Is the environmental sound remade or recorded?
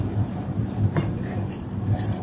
remade